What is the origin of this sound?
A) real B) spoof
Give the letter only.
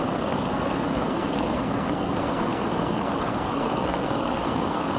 B